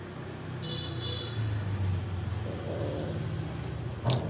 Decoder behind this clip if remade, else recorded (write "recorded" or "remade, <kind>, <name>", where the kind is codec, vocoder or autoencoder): recorded